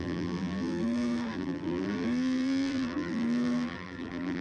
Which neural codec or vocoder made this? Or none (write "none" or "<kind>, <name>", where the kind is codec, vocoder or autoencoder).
vocoder, BigVGAN v2